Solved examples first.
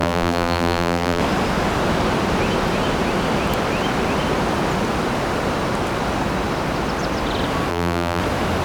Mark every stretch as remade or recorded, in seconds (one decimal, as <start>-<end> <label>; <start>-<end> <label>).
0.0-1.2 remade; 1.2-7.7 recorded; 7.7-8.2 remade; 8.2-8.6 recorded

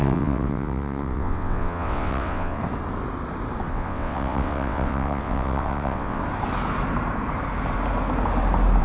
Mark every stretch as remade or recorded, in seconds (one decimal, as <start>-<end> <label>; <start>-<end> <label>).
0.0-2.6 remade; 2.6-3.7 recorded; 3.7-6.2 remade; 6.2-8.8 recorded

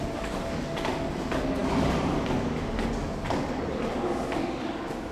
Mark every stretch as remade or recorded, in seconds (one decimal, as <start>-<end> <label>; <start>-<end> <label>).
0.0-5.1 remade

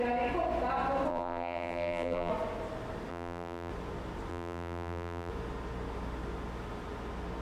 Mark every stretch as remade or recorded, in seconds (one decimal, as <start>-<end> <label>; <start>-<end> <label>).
0.0-1.1 recorded; 1.1-2.3 remade; 2.3-3.1 recorded; 3.1-3.7 remade; 3.7-4.3 recorded; 4.3-5.3 remade; 5.3-7.4 recorded

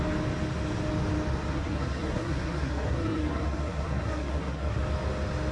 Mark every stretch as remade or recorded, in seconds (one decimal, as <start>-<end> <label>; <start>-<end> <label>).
0.0-1.5 recorded; 1.5-4.8 remade; 4.8-5.5 recorded